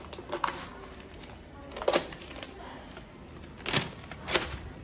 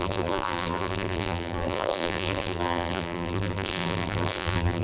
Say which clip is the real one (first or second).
first